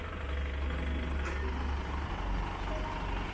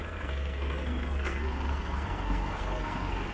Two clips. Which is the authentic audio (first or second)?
first